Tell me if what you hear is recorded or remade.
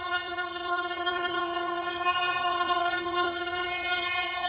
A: remade